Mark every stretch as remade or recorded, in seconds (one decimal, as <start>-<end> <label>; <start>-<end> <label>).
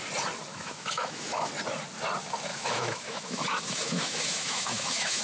0.0-0.5 recorded; 0.5-1.5 remade; 1.5-2.5 recorded; 2.5-5.2 remade